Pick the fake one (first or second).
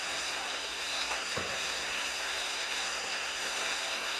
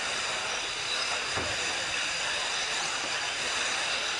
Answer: first